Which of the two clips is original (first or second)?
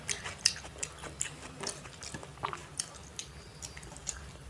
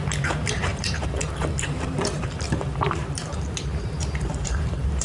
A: first